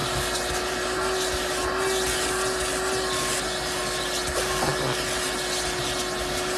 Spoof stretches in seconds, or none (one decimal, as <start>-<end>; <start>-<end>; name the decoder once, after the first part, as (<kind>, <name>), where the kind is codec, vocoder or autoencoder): none